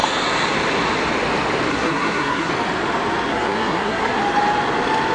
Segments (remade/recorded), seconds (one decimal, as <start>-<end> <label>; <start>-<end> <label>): 0.0-1.7 recorded; 1.7-2.5 remade; 2.5-3.3 recorded; 3.3-4.2 remade; 4.2-5.1 recorded

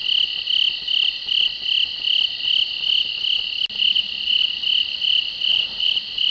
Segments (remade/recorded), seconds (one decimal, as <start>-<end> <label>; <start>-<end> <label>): 0.0-5.5 recorded; 5.5-6.3 remade

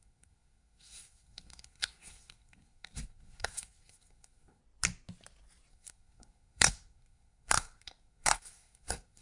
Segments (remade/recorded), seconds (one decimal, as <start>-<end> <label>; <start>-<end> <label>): 0.0-4.6 remade; 4.6-5.7 recorded; 5.7-9.2 remade

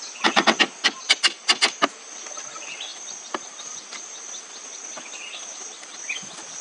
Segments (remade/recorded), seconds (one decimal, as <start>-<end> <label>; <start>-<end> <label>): 0.0-6.6 recorded

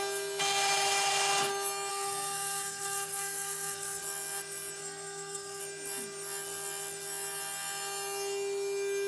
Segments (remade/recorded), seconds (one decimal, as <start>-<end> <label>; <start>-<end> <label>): 0.0-1.9 recorded; 1.9-4.0 remade; 4.0-4.8 recorded; 4.8-5.6 remade; 5.6-9.1 recorded

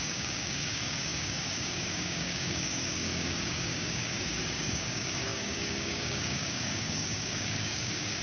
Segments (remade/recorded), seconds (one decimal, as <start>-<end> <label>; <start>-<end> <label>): 0.0-8.2 remade

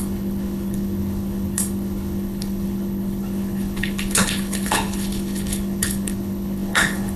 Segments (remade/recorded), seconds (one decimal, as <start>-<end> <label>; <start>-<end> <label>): 0.0-7.2 remade

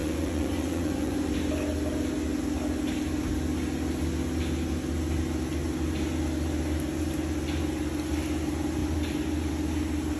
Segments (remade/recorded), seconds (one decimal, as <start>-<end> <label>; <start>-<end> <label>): 0.0-1.3 remade; 1.3-10.2 recorded